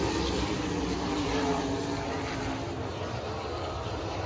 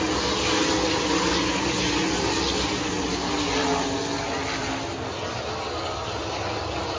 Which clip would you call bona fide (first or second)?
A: second